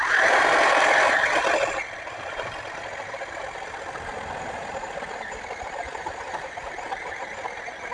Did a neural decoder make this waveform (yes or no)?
no